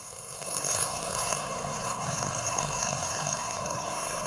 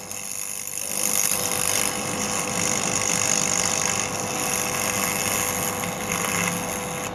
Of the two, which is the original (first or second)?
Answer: second